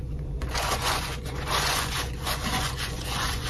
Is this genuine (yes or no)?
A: no